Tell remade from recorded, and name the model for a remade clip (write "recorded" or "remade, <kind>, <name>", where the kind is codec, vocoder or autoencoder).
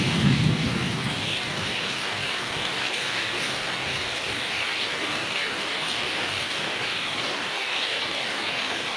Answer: remade, codec, DAC